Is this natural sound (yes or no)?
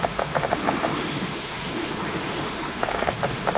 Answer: no